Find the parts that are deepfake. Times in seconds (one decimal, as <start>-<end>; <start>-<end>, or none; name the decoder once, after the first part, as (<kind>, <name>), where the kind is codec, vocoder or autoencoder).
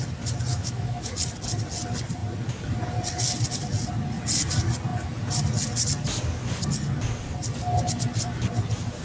0.5-1.1 (autoencoder, DAC-VAE)